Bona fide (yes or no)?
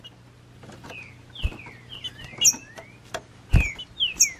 yes